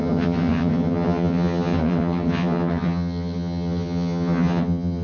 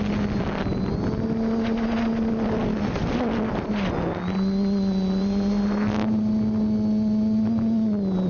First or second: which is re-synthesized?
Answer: first